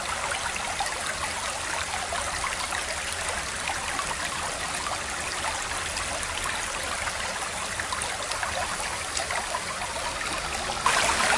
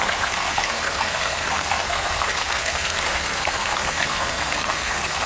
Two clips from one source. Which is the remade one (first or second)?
second